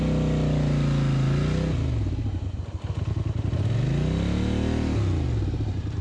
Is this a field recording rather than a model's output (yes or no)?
yes